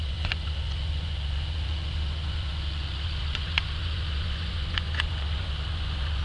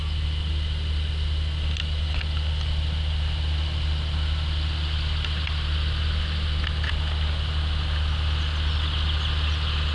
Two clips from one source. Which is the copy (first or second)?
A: first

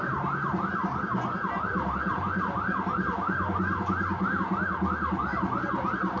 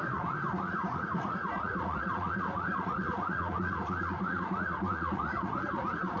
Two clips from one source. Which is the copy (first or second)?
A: second